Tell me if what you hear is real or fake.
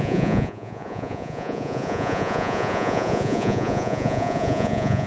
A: fake